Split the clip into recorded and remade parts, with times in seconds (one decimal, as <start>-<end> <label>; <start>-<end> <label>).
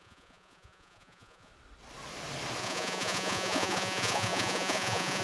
0.0-1.5 remade; 1.5-2.6 recorded; 2.6-5.2 remade